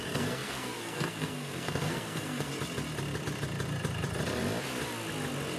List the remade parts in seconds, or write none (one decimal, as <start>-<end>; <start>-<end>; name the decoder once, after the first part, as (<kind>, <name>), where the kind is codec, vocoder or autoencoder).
0.0-2.5 (codec, SNAC)